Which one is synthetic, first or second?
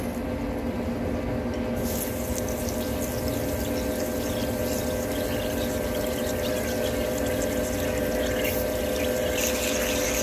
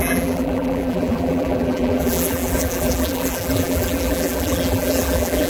second